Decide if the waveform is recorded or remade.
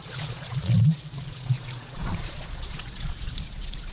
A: remade